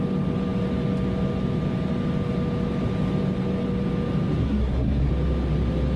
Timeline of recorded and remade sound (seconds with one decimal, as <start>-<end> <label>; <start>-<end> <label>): 0.0-4.4 recorded; 4.4-5.1 remade; 5.1-6.0 recorded